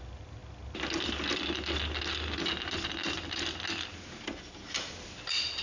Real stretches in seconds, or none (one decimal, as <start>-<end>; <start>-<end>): 0.0-5.6

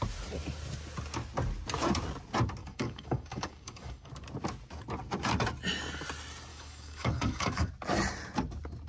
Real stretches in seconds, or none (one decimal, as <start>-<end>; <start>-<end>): 0.0-2.6; 4.1-6.5; 7.7-8.9

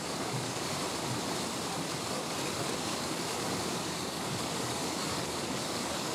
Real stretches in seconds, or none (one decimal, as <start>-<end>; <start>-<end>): 0.8-2.0

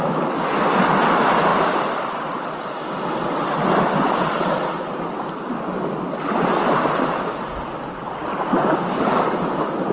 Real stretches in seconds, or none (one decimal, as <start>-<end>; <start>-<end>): 0.0-9.9

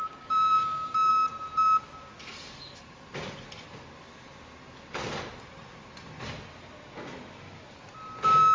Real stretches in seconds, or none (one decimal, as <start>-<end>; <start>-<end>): 1.1-8.5